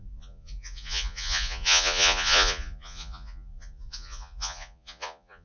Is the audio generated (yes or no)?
yes